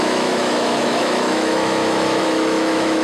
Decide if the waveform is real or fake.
fake